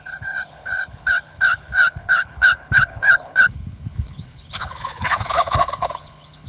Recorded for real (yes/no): no